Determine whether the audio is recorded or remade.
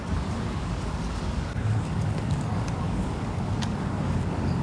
remade